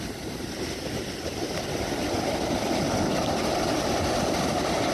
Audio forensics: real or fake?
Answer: real